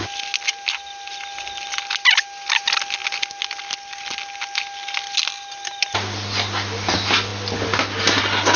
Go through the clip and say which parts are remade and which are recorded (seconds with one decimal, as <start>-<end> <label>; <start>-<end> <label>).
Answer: 0.0-8.6 recorded